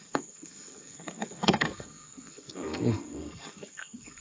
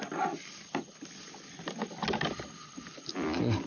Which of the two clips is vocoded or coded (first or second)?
first